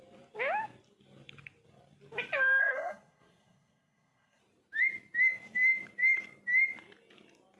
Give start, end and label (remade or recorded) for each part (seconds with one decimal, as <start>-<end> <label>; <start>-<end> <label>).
0.0-2.6 recorded; 2.6-4.4 remade; 4.4-7.6 recorded